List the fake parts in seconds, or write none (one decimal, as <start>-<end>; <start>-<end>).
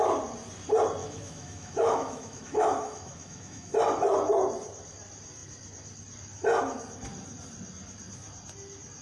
1.0-3.7